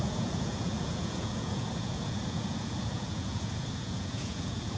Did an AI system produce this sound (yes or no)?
yes